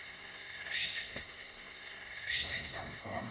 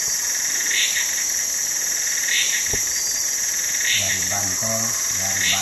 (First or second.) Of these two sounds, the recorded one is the second